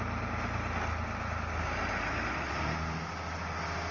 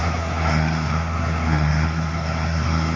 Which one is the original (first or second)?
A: first